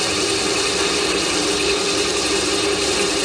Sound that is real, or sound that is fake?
real